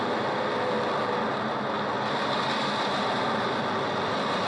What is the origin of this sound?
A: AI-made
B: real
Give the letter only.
B